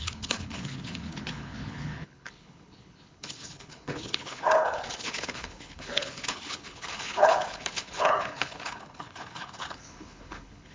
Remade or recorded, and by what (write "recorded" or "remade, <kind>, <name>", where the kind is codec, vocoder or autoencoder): remade, codec, HILCodec